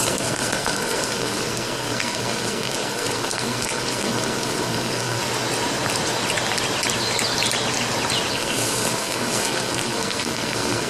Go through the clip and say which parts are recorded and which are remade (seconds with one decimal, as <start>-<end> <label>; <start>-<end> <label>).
0.0-5.2 remade; 5.2-8.3 recorded; 8.3-10.9 remade